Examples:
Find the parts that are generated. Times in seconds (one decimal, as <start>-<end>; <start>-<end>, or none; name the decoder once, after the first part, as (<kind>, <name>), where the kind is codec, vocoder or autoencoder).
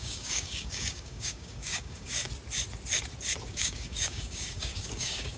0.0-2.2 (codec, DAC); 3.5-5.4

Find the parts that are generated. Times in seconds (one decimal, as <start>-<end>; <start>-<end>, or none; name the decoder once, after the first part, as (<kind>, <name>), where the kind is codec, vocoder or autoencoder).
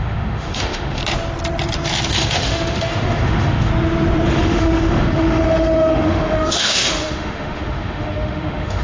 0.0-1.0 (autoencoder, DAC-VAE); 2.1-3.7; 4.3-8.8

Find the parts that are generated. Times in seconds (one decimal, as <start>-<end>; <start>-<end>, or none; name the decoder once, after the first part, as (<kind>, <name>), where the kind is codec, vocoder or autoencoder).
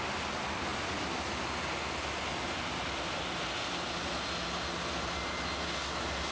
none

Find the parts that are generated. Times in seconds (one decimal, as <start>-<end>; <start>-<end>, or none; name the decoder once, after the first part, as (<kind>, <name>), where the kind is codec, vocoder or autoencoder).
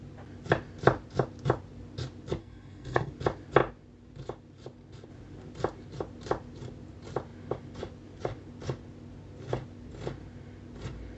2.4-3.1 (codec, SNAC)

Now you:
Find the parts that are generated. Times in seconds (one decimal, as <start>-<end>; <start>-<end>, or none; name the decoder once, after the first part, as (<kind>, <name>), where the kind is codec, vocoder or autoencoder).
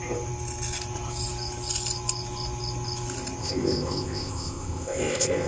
3.4-5.5 (codec, ZipCodec)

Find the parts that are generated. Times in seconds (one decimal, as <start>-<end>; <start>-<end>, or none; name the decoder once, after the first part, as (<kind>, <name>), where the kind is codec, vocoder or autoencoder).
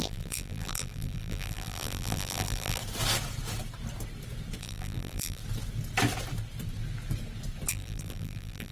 0.0-2.8 (vocoder, BigVGAN v2); 4.6-5.4; 7.7-8.7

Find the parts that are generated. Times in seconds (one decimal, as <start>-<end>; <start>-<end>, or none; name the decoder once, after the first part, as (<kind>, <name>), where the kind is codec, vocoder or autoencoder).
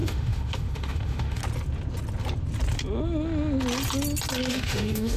0.0-1.4 (autoencoder, DAC-VAE); 4.5-5.2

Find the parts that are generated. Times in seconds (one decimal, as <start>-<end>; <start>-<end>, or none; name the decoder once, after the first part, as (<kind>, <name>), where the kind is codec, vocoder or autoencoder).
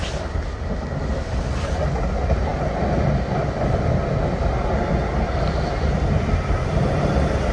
none